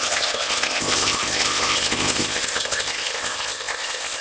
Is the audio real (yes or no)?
no